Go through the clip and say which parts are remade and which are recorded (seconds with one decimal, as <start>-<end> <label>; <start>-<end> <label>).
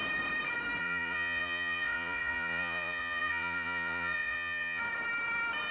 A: 0.0-0.8 recorded; 0.8-4.8 remade; 4.8-5.7 recorded